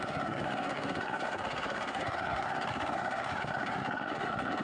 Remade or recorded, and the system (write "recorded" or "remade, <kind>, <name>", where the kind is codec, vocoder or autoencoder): remade, codec, SNAC